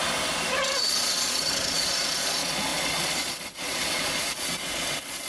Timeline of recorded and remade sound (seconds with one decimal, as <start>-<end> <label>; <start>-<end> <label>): 0.0-0.5 recorded; 0.5-5.3 remade